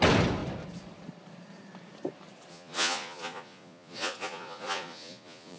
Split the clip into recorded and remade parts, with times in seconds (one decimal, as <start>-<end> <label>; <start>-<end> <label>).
0.0-2.5 recorded; 2.5-5.6 remade